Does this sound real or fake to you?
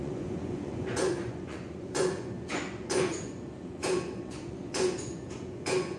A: fake